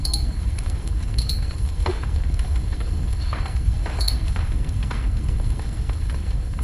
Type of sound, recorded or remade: remade